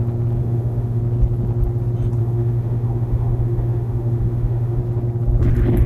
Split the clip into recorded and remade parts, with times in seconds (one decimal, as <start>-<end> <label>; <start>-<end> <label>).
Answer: 0.0-0.4 recorded; 0.4-1.0 remade; 1.0-2.2 recorded; 2.2-4.8 remade; 4.8-5.9 recorded